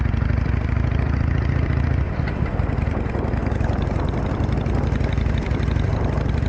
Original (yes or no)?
no